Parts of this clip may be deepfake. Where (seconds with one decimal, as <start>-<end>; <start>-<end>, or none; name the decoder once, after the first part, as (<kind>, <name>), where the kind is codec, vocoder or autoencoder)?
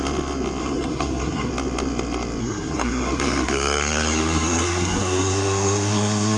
0.6-1.5 (codec, SNAC); 2.4-6.4